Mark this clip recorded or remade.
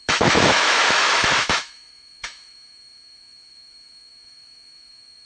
remade